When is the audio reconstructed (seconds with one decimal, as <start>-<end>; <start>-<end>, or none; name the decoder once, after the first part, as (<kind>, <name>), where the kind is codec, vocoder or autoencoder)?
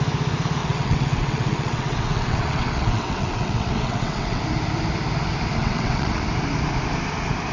0.6-4.4 (vocoder, WaveNeXt); 5.6-6.2